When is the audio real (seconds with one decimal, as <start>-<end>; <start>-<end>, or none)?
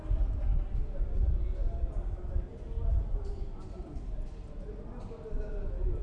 0.0-6.0